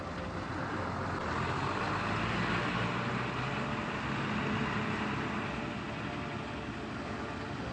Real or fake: real